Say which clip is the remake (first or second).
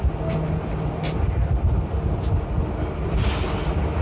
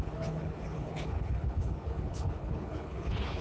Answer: second